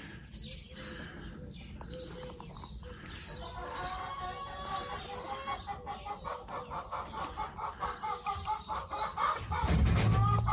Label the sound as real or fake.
real